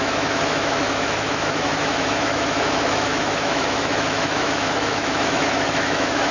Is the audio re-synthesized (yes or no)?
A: yes